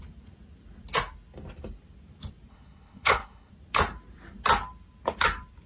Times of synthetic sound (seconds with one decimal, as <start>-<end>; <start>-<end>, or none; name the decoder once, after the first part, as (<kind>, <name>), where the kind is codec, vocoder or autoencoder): 2.5-3.5 (codec, HILCodec)